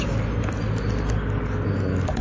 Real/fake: real